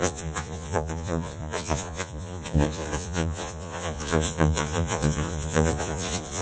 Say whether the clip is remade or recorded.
remade